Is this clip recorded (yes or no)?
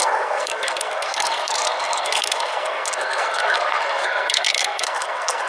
no